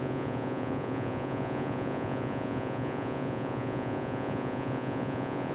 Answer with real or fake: fake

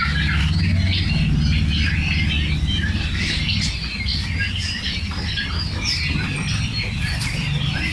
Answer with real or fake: real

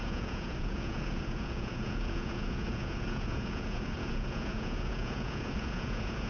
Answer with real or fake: fake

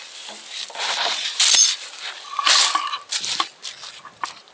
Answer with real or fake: real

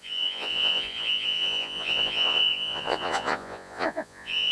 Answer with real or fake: fake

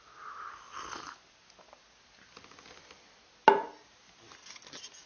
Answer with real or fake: real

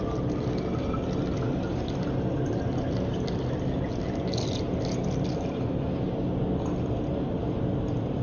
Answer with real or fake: real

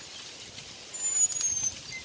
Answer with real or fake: real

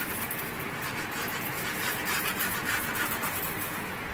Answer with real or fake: fake